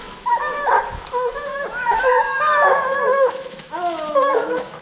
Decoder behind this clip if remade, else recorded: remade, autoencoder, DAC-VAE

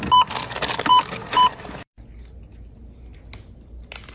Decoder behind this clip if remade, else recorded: recorded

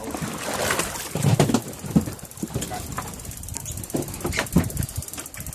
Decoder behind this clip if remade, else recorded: recorded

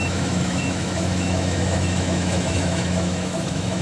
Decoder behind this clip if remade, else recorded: remade, autoencoder, DAC-VAE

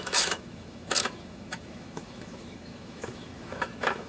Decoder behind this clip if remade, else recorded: remade, autoencoder, DAC-VAE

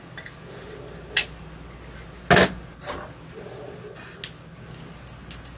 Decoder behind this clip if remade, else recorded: recorded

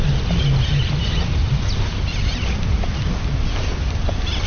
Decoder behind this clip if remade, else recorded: recorded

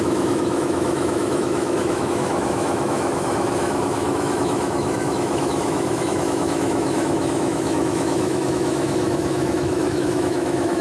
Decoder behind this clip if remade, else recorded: remade, autoencoder, DAC-VAE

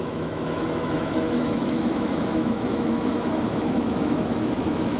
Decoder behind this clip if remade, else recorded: remade, autoencoder, DAC-VAE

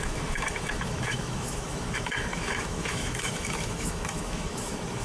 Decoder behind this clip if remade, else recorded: remade, autoencoder, DAC-VAE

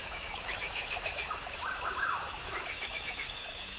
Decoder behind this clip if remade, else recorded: remade, autoencoder, DAC-VAE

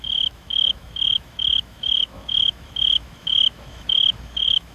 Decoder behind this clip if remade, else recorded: remade, autoencoder, DAC-VAE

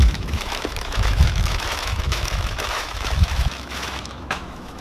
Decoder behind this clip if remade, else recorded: remade, autoencoder, DAC-VAE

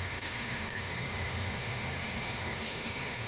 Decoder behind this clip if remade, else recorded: remade, autoencoder, DAC-VAE